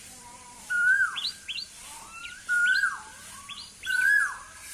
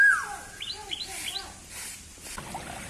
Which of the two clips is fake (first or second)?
first